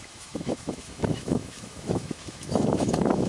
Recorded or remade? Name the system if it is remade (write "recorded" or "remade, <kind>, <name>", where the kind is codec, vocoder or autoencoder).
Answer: remade, autoencoder, DAC-VAE